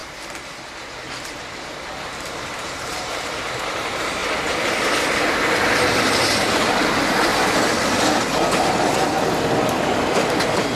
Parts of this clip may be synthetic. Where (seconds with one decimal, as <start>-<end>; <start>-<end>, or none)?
1.2-4.2; 6.2-7.3; 10.1-10.8